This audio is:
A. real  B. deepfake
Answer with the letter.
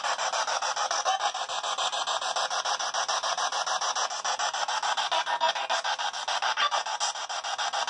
A